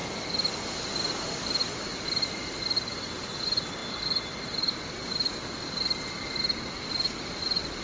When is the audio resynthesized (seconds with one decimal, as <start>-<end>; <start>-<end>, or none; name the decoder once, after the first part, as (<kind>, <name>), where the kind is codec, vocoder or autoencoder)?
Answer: none